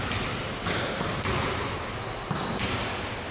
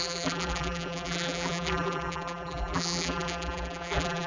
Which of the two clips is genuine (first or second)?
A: first